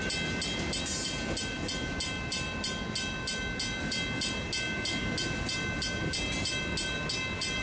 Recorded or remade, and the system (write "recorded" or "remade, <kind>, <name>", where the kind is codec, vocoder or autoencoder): recorded